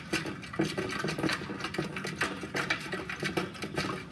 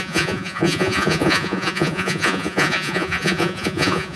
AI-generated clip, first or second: second